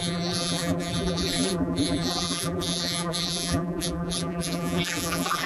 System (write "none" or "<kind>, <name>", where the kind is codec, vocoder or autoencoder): vocoder, BigVGAN v2